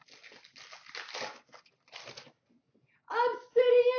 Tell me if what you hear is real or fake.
real